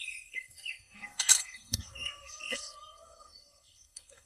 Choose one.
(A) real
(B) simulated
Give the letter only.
B